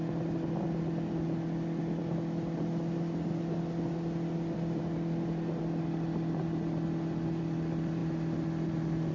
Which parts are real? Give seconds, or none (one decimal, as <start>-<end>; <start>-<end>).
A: 0.0-9.1